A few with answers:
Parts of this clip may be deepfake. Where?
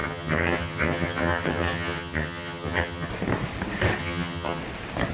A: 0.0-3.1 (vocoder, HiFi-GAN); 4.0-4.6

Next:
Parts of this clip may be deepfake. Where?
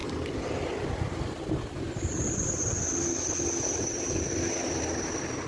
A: none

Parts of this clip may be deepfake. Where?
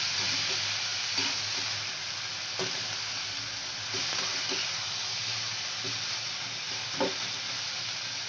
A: 0.9-1.6 (vocoder, BigVGAN v2)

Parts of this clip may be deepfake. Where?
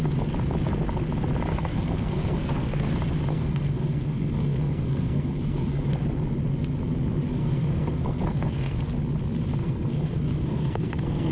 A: 1.5-2.9 (codec, SNAC); 3.3-5.8; 7.3-8.8; 9.6-11.3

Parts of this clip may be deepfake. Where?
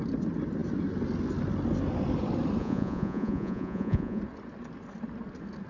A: 2.6-4.2 (vocoder, Vocos)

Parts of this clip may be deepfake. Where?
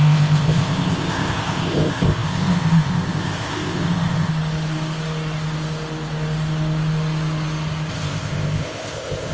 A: 0.0-4.3 (codec, ZipCodec); 7.9-9.3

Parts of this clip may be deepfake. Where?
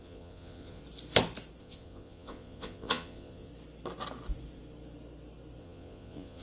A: 0.0-0.8 (vocoder, Vocos); 1.6-3.5; 5.6-6.4